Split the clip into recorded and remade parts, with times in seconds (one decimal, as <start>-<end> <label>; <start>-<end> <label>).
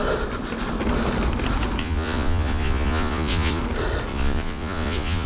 0.0-1.8 recorded; 1.8-3.6 remade; 3.6-4.1 recorded; 4.1-5.3 remade